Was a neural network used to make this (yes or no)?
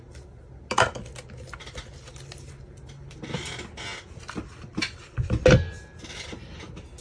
no